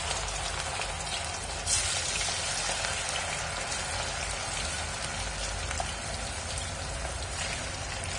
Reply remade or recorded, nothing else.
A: recorded